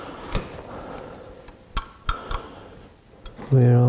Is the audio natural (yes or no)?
yes